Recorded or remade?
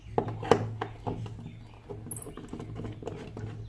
recorded